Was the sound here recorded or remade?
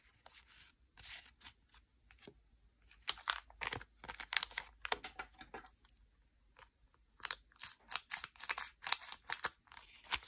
recorded